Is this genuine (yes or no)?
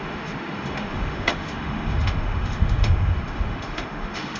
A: no